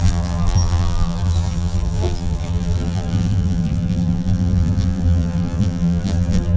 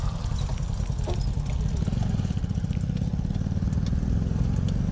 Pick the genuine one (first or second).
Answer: second